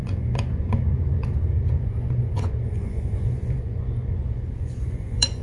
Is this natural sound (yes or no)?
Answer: no